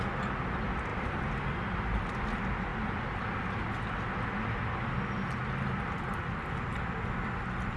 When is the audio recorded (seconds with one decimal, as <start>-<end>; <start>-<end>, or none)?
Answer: 0.0-0.9; 2.0-7.8